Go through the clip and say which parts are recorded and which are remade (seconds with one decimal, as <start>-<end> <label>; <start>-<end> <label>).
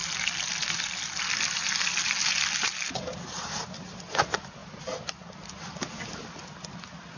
0.0-7.2 recorded